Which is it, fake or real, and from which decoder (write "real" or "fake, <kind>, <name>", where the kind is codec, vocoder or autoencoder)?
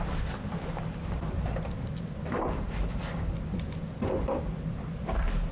real